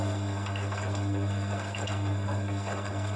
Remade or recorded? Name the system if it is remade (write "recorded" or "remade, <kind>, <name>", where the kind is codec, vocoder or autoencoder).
remade, codec, SNAC